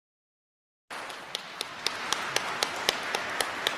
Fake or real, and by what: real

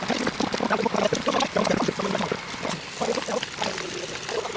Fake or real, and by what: fake, vocoder, BigVGAN v2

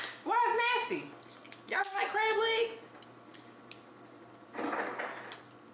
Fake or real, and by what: real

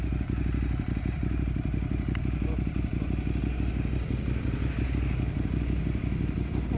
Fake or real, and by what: real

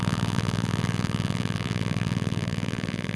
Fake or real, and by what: fake, vocoder, BigVGAN v2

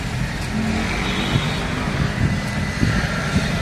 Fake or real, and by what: real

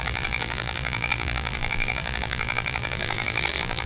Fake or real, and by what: fake, vocoder, BigVGAN v2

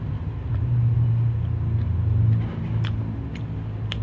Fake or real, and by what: fake, vocoder, BigVGAN v2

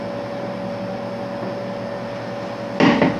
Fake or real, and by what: real